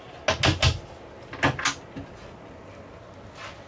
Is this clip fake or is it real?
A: real